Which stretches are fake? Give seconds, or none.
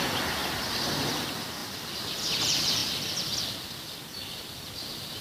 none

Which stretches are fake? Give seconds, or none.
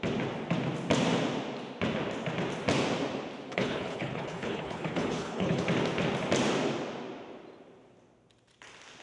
3.5-5.6 (codec, HILCodec)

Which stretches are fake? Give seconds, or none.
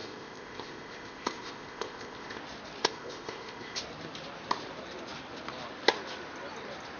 0.0-2.4 (codec, ZipCodec); 2.8-3.8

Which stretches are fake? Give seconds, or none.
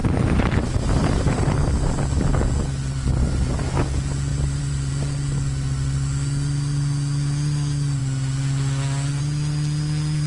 0.0-1.4 (vocoder, BigVGAN v2); 4.3-4.9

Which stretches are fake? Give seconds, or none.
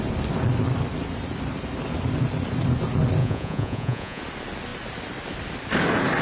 3.2-4.2 (vocoder, Vocos)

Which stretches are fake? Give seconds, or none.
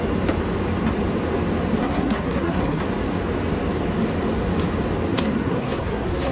1.8-2.8 (codec, SNAC); 5.1-6.3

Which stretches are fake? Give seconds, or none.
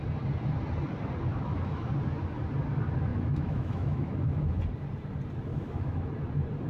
1.3-1.9 (autoencoder, DAC-VAE); 3.1-4.6; 5.5-6.1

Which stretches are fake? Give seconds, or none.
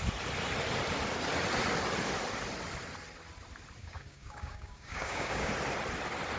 3.8-5.5 (codec, DAC)